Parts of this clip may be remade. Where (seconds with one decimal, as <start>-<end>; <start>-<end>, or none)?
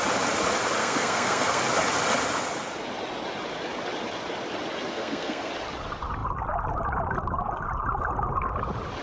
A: 0.8-1.6; 4.9-5.5